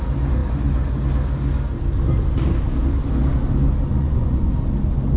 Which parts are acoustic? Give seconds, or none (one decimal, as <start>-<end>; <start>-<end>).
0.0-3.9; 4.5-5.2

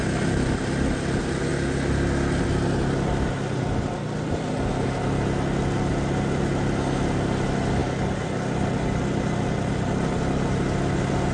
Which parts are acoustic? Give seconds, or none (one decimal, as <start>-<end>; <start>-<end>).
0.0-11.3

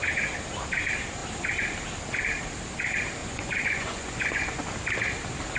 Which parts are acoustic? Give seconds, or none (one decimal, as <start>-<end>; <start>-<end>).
0.0-3.2; 4.6-5.6

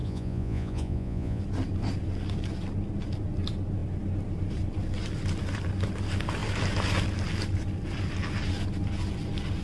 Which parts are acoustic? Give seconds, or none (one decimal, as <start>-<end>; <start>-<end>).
1.4-9.6

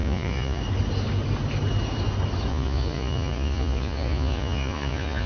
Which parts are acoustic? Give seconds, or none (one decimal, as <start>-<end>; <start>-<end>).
0.6-2.5

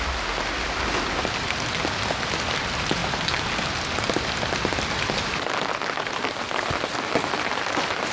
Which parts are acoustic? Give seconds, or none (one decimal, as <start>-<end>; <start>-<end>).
0.0-8.1

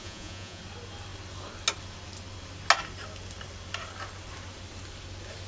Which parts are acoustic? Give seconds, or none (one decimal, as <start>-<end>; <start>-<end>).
0.6-5.5

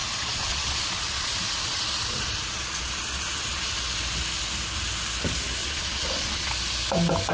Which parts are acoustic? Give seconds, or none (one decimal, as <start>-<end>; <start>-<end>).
3.7-5.6; 6.5-7.3